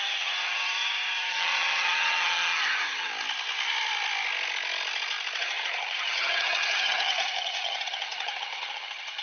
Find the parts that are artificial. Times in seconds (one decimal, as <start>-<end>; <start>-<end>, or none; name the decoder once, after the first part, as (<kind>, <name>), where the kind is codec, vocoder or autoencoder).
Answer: 0.0-3.1 (vocoder, HiFi-GAN); 5.4-9.2